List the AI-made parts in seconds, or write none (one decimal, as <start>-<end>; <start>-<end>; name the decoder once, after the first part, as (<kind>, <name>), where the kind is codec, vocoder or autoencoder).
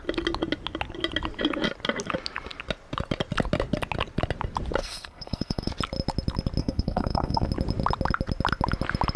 4.8-5.7 (codec, SNAC); 6.6-7.5